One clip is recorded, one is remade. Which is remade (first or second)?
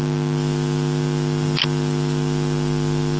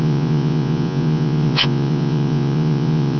second